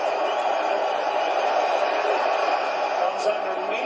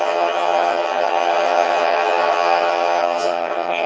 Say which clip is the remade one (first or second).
second